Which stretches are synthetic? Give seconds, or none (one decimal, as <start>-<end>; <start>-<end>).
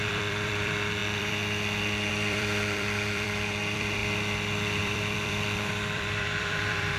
0.0-7.0